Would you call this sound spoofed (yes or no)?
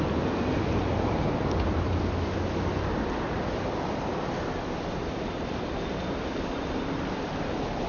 yes